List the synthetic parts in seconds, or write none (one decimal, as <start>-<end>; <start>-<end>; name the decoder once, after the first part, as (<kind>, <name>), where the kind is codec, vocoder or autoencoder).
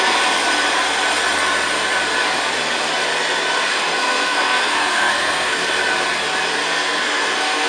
3.7-5.7 (codec, SNAC); 6.6-7.7